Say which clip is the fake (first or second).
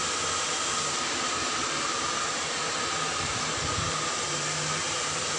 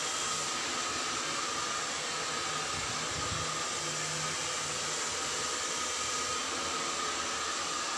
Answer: first